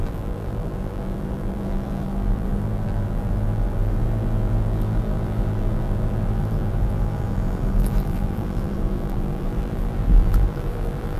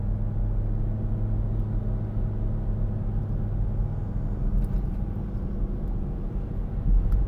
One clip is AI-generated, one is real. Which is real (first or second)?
second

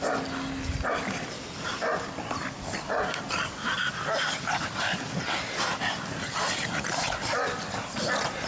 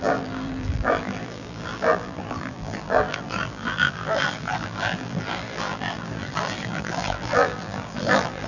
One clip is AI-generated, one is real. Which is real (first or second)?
first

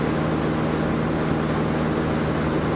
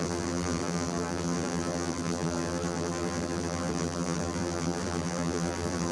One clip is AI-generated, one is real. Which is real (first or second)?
first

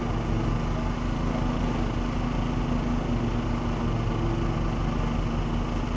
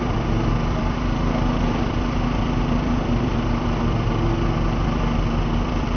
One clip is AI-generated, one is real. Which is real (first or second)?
first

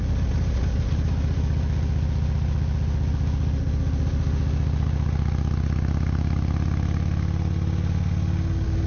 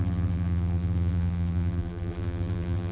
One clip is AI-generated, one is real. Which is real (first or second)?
first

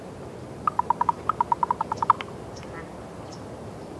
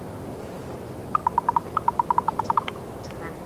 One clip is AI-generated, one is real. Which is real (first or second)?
second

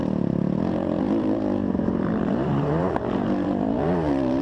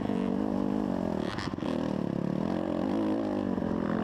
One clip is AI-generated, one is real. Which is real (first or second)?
second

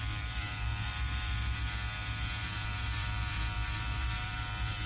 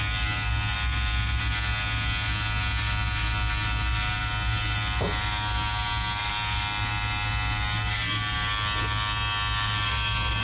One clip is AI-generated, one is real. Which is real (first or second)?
second